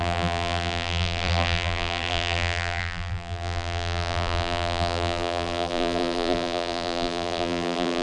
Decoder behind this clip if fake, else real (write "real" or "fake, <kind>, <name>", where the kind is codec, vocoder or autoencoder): fake, vocoder, BigVGAN v2